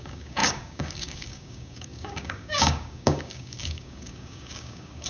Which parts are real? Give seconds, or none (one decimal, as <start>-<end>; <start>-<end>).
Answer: none